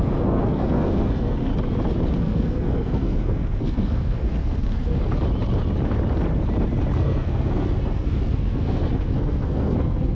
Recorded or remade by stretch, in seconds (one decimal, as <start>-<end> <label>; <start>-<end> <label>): 0.0-1.5 remade; 1.5-2.2 recorded; 2.2-5.1 remade; 5.1-7.0 recorded; 7.0-10.1 remade